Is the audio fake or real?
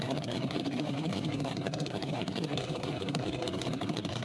fake